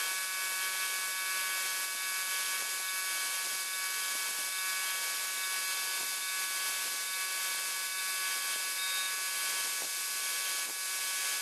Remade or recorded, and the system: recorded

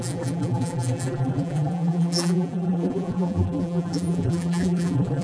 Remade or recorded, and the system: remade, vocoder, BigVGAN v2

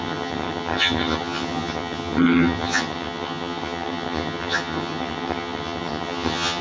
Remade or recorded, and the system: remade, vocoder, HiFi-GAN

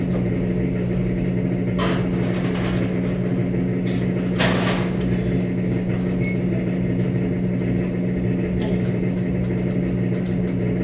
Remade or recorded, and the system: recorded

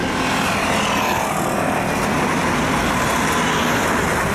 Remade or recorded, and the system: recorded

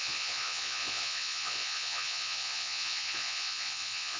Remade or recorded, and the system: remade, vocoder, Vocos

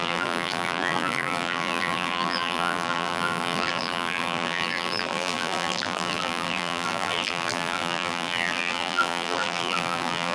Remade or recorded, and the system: remade, vocoder, BigVGAN v2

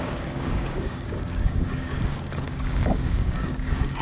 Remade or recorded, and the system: remade, codec, DAC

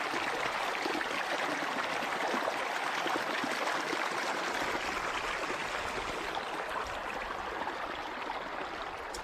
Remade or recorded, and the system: recorded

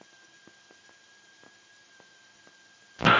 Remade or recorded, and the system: recorded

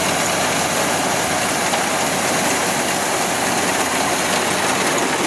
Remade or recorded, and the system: recorded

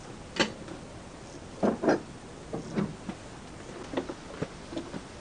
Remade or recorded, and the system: recorded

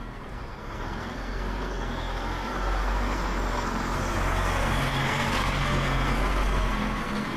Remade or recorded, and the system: remade, codec, SNAC